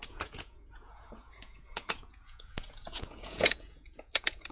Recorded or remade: remade